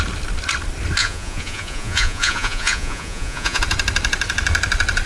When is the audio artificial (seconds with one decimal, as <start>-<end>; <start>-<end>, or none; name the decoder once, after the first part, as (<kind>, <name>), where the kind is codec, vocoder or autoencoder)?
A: 1.0-3.6 (vocoder, Vocos)